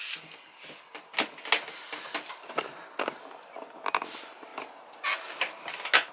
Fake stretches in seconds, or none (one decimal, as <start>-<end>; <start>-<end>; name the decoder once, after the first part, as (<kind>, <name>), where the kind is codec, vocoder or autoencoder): none